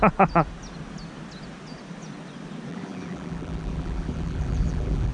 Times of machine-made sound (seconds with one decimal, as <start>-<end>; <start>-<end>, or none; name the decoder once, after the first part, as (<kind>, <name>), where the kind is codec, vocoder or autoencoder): 2.7-5.1 (vocoder, BigVGAN v2)